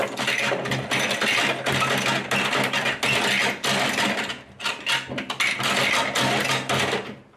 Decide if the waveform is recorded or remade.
recorded